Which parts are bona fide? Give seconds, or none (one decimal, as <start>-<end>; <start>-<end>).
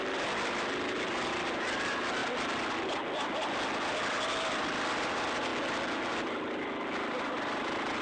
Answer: 2.2-2.8; 5.5-6.0